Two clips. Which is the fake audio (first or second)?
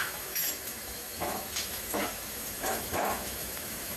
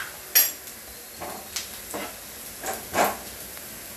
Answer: first